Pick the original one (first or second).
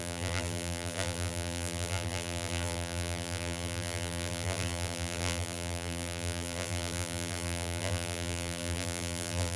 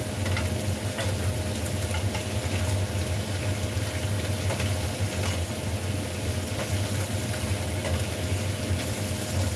second